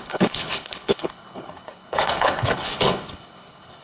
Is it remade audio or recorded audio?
remade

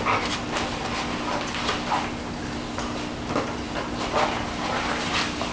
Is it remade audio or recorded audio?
recorded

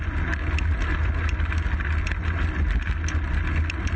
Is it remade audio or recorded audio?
recorded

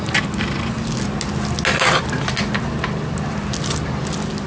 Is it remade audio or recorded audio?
recorded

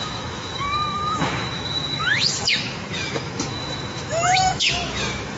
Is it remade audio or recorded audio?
remade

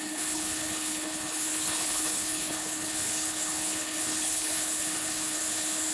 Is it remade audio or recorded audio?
remade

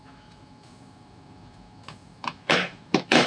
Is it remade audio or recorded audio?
remade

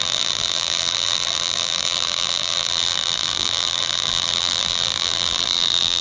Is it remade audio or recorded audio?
remade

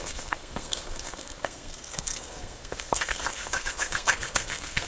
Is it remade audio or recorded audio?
remade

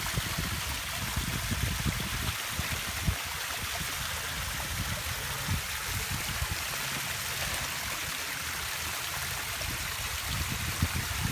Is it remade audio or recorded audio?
recorded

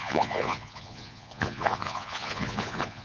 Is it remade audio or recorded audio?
remade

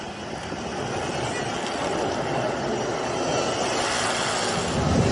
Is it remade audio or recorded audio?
recorded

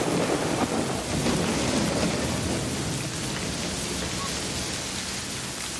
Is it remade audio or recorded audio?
recorded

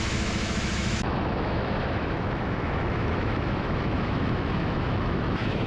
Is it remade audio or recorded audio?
remade